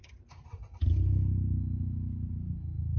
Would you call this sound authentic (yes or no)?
yes